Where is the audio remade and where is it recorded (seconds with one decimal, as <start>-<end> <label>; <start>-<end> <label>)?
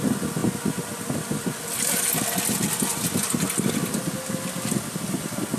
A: 0.0-5.6 recorded